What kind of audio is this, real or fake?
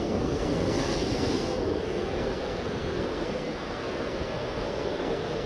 fake